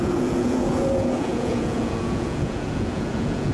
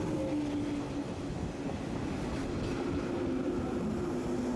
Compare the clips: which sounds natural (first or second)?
second